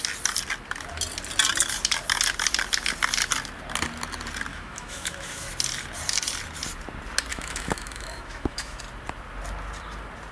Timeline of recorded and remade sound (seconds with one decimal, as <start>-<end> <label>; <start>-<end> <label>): 0.0-4.5 recorded; 4.5-5.5 remade; 5.5-7.3 recorded; 7.3-8.8 remade; 8.8-10.3 recorded